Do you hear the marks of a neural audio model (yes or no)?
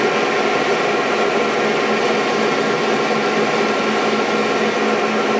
no